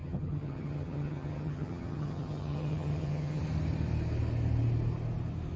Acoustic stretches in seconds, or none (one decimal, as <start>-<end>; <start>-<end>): 3.4-5.6